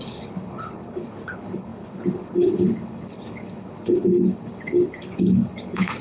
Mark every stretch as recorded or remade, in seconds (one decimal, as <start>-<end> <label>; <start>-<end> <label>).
0.0-6.0 remade